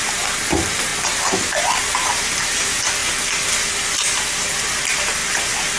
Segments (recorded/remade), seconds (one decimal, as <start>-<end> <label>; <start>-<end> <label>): 0.0-5.8 recorded